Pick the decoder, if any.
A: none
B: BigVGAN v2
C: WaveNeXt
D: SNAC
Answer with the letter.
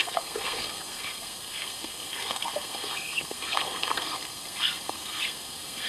D